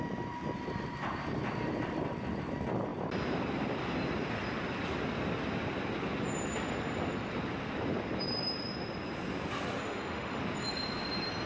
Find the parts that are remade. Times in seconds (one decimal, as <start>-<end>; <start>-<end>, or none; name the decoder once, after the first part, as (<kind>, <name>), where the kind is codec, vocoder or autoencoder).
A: 9.8-10.4 (autoencoder, DAC-VAE)